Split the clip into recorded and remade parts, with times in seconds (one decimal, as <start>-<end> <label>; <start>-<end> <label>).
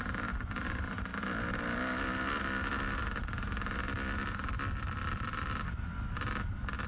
0.0-6.9 recorded